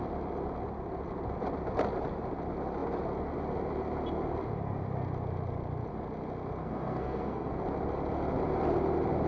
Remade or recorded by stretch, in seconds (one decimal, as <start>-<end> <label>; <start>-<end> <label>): 0.0-6.6 recorded; 6.6-7.5 remade; 7.5-9.3 recorded